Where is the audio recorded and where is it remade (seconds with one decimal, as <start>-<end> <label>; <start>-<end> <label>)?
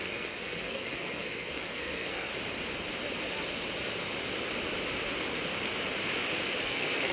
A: 0.0-2.3 remade; 2.3-6.6 recorded; 6.6-7.1 remade